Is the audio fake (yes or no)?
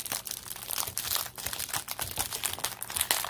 no